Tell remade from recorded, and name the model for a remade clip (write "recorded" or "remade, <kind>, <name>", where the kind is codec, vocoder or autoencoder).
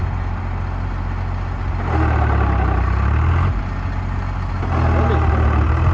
recorded